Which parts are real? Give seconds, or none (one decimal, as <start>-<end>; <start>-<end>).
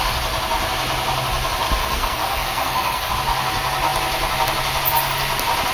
0.0-1.8; 3.1-5.7